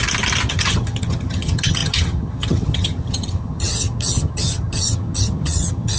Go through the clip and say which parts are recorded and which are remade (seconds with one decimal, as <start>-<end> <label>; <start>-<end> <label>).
0.0-0.5 recorded; 0.5-6.0 remade